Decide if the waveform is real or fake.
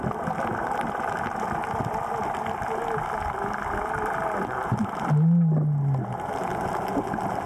real